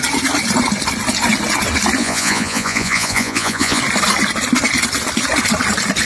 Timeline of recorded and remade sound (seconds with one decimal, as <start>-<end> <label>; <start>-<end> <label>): 0.0-2.0 recorded; 2.0-3.8 remade; 3.8-6.0 recorded